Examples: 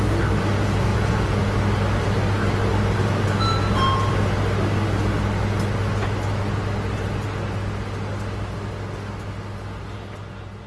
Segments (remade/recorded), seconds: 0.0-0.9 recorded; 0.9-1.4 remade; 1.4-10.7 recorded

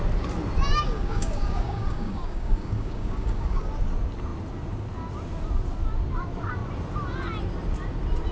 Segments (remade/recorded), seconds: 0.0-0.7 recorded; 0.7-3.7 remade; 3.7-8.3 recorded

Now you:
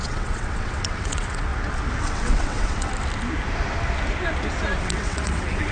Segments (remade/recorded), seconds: 0.0-1.5 remade; 1.5-2.0 recorded; 2.0-2.9 remade; 2.9-4.8 recorded; 4.8-5.7 remade

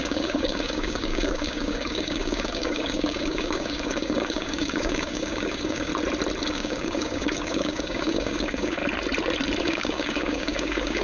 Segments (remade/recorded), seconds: 0.0-5.9 remade; 5.9-6.5 recorded; 6.5-8.8 remade; 8.8-9.6 recorded; 9.6-11.0 remade

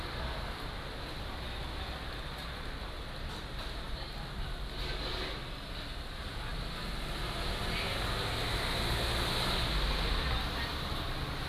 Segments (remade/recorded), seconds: 0.0-11.5 recorded

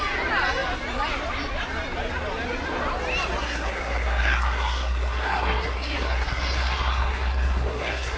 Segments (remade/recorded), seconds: 0.0-3.4 recorded; 3.4-8.2 remade

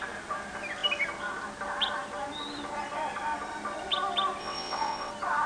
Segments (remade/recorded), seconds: 0.0-4.4 recorded; 4.4-5.1 remade; 5.1-5.5 recorded

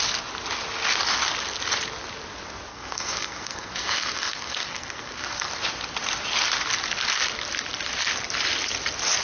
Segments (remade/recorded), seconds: 0.0-2.7 recorded; 2.7-5.6 remade; 5.6-9.2 recorded